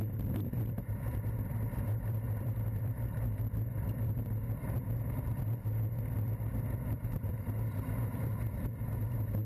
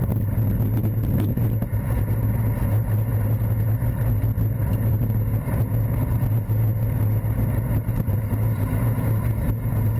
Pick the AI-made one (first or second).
first